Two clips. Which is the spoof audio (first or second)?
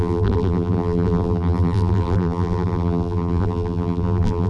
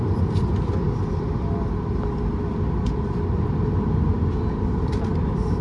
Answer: first